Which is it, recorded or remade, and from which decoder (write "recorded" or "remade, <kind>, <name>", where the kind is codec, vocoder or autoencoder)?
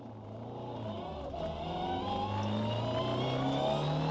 recorded